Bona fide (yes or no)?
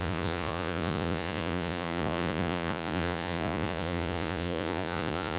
no